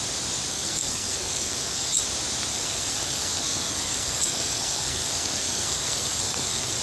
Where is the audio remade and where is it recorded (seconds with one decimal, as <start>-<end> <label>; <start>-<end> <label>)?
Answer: 0.0-0.5 recorded; 0.5-2.0 remade; 2.0-2.5 recorded; 2.5-6.8 remade